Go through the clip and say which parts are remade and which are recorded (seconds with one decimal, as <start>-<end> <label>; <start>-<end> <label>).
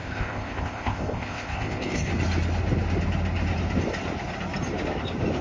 0.0-2.1 remade; 2.1-5.4 recorded